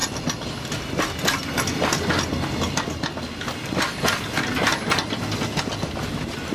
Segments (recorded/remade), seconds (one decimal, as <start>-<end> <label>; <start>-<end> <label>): 0.0-6.5 recorded